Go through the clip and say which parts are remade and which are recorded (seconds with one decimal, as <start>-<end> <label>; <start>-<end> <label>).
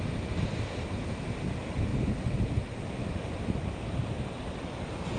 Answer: 0.0-5.2 recorded